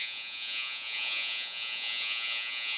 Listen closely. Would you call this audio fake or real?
fake